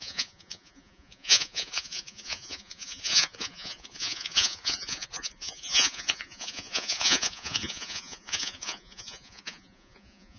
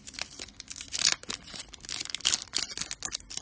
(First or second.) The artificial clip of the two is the first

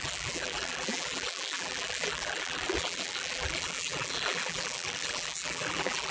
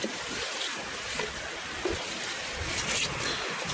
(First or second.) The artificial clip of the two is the first